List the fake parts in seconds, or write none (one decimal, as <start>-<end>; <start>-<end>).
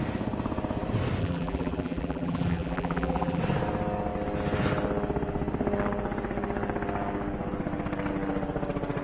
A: 1.2-3.4